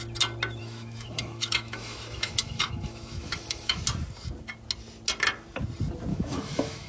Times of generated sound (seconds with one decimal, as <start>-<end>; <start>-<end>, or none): 0.6-3.8; 6.1-6.9